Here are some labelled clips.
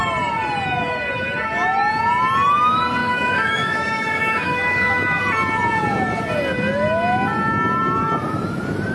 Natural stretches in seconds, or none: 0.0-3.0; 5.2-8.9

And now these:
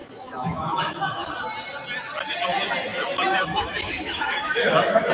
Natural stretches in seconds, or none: 1.3-2.9

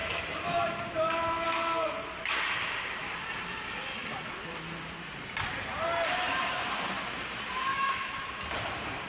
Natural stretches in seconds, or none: 0.0-7.7; 8.3-9.1

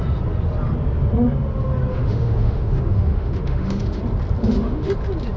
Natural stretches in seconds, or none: 0.0-1.9; 4.0-4.4; 4.9-5.4

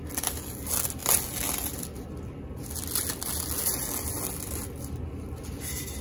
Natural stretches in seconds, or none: 0.0-6.0

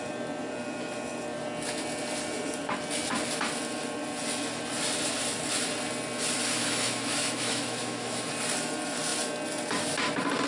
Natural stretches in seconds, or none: 0.0-6.6; 8.3-10.5

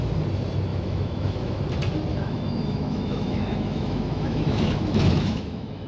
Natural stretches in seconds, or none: 0.0-0.7; 1.6-2.1